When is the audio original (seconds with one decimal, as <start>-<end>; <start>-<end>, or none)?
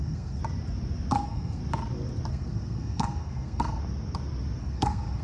0.4-1.1; 1.6-2.3; 3.8-4.6